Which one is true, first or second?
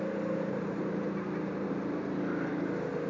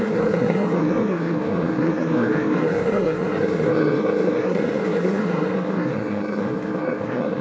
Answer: first